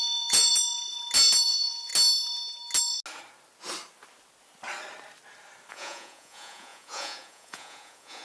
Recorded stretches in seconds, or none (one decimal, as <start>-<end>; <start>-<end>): 0.5-1.4; 1.9-5.7